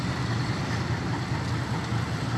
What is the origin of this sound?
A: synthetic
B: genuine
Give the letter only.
B